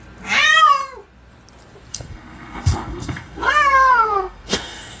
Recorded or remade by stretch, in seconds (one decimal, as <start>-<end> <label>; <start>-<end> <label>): 0.0-1.9 recorded; 1.9-5.0 remade